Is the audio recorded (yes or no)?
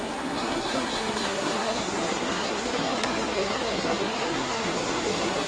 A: no